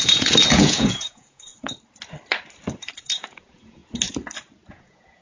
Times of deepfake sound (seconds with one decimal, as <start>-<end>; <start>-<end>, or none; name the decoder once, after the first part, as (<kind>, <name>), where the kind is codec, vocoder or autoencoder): 0.0-1.5 (vocoder, Vocos); 3.0-3.8; 4.7-5.2